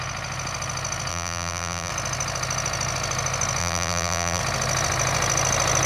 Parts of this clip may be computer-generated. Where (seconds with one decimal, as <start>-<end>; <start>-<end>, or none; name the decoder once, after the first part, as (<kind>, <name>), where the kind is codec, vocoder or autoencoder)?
1.1-1.9 (vocoder, BigVGAN v2); 3.6-4.4